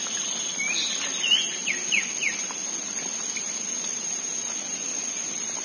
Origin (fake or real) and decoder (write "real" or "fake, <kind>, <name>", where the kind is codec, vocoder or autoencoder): real